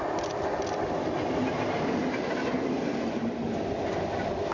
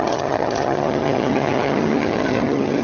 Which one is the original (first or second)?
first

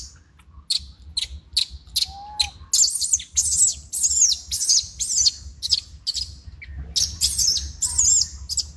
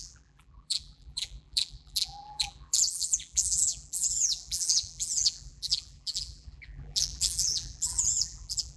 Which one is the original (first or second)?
first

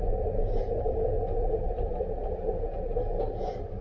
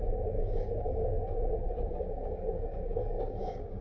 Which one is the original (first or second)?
first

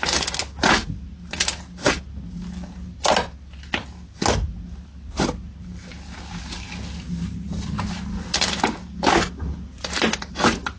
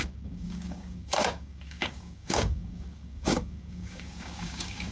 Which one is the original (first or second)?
first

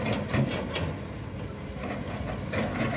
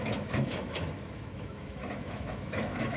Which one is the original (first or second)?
first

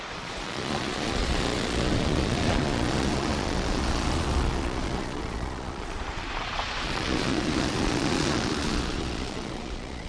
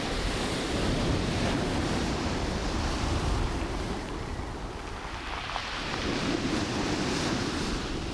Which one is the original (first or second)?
second